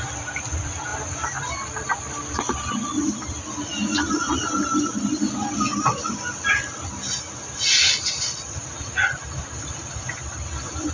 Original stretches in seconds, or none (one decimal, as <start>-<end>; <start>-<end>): 0.0-10.9